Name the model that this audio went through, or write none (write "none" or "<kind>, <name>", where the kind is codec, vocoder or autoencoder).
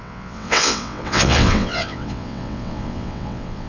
vocoder, WaveNeXt